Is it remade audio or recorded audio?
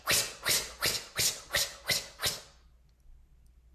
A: recorded